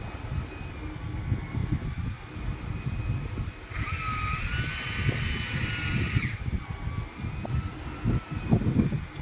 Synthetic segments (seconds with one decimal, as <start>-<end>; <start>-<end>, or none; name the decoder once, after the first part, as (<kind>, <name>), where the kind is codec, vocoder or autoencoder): none